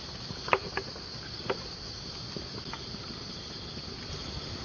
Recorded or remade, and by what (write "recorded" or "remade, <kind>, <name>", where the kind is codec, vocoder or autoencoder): recorded